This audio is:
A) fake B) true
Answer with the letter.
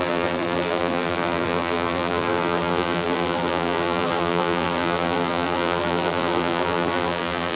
A